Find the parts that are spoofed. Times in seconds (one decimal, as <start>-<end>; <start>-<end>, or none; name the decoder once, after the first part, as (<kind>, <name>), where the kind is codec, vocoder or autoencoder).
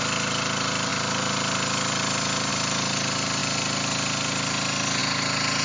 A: none